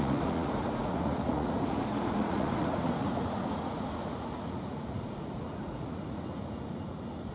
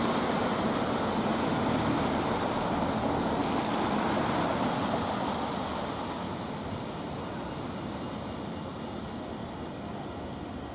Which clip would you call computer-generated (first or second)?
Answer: first